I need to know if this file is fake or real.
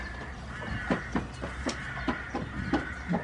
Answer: fake